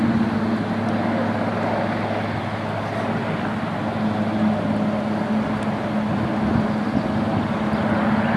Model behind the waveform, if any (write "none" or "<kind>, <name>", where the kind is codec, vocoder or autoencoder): none